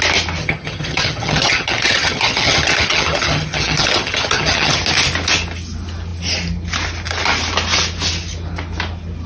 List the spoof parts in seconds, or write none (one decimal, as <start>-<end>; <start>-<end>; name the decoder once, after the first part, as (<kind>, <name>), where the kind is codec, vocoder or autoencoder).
0.4-4.8 (vocoder, HiFi-GAN)